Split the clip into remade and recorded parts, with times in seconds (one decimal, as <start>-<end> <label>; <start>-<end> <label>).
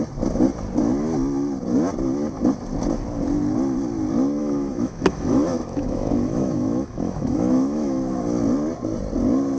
0.0-4.4 recorded; 4.4-8.2 remade; 8.2-9.6 recorded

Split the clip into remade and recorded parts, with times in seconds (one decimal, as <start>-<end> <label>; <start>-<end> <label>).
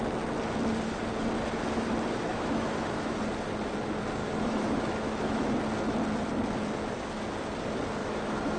0.0-2.3 recorded; 2.3-3.1 remade; 3.1-4.2 recorded; 4.2-5.6 remade; 5.6-8.0 recorded; 8.0-8.6 remade